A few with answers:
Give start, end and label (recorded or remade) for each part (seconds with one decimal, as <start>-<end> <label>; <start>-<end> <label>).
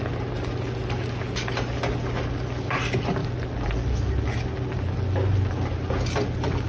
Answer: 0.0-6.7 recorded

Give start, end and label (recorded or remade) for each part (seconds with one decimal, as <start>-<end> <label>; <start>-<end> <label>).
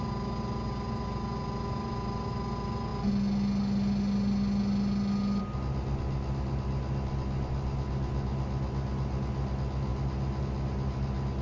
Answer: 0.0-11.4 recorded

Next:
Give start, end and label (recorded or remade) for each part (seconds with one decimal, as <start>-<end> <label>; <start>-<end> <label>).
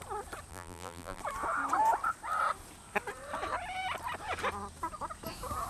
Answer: 0.0-0.5 recorded; 0.5-1.2 remade; 1.2-5.7 recorded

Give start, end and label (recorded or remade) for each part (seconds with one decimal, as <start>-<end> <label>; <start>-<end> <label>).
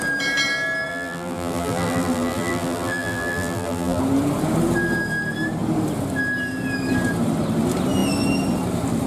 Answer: 0.0-0.9 recorded; 0.9-4.0 remade; 4.0-9.1 recorded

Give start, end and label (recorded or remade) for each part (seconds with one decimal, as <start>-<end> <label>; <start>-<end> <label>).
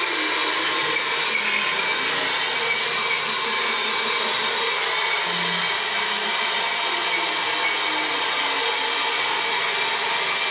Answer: 0.0-0.4 recorded; 0.4-1.3 remade; 1.3-10.5 recorded